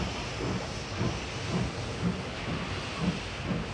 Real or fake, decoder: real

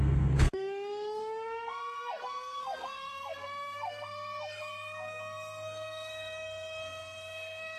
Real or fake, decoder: fake, codec, SNAC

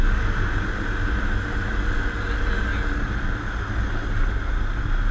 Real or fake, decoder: real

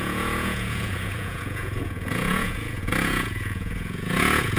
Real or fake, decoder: fake, vocoder, Vocos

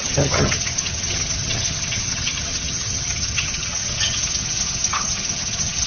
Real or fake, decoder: fake, vocoder, HiFi-GAN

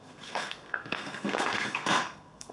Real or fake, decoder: fake, codec, SNAC